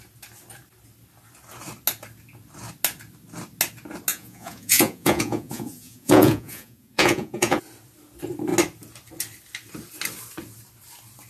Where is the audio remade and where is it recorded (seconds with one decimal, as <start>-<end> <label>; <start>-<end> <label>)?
0.0-4.1 recorded; 4.1-7.6 remade; 7.6-11.3 recorded